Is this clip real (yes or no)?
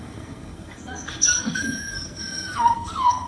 no